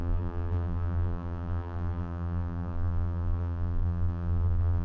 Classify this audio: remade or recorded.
remade